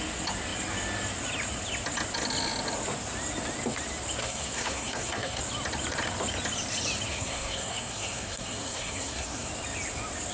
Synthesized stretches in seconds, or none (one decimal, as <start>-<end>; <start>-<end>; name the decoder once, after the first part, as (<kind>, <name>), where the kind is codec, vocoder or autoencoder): 4.2-5.4 (codec, SNAC); 7.1-9.5

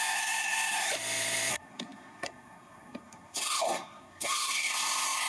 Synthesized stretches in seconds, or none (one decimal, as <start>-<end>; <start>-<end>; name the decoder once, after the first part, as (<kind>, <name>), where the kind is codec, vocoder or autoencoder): 0.0-0.9 (codec, SNAC); 1.5-5.3

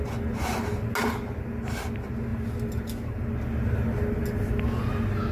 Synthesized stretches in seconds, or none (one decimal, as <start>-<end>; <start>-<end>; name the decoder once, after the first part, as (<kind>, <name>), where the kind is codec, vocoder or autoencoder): none

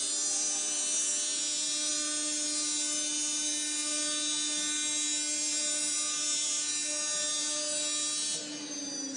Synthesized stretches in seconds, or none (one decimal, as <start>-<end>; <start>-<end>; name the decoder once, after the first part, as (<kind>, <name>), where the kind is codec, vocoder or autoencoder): none

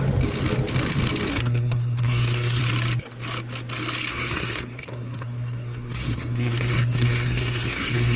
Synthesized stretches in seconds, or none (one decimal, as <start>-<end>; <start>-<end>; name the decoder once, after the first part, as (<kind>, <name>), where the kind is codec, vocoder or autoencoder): 1.3-2.6 (codec, SNAC); 4.1-8.2

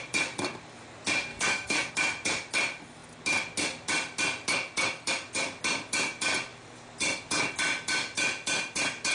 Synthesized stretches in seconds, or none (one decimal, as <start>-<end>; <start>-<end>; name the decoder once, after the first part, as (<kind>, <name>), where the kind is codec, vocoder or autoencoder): 1.3-1.9 (codec, SNAC)

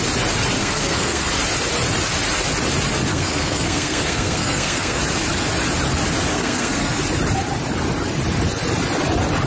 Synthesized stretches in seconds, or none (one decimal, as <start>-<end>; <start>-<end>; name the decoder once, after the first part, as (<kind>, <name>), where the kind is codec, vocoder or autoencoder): 0.6-1.3 (codec, SNAC); 3.1-5.0; 6.3-7.0

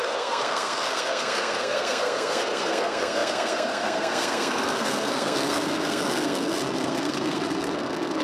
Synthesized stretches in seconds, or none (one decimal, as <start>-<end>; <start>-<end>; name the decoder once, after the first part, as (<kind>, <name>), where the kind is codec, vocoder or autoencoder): 0.0-8.2 (codec, SNAC)